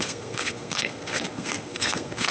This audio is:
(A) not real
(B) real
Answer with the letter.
A